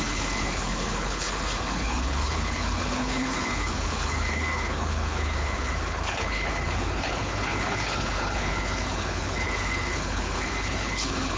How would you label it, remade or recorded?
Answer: remade